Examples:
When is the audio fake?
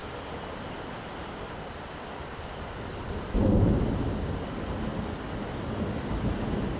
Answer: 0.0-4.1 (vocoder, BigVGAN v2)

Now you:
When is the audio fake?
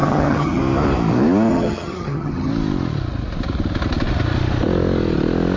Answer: 0.0-0.6 (vocoder, HiFi-GAN); 1.5-2.5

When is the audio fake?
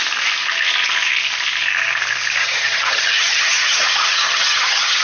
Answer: 2.4-5.0 (vocoder, HiFi-GAN)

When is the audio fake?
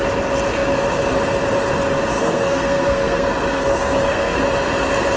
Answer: 2.2-4.4 (codec, SNAC)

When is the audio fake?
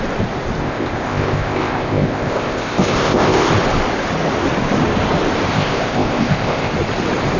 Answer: 0.6-3.5 (codec, ZipCodec); 5.5-6.7